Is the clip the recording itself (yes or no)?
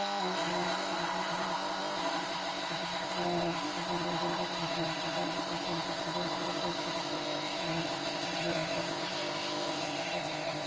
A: no